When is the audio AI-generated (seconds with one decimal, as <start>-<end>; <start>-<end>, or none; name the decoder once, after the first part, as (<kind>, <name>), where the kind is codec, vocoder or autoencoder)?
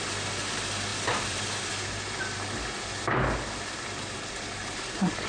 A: 0.9-1.7 (vocoder, BigVGAN v2)